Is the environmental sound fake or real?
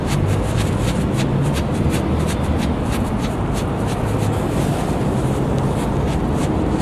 fake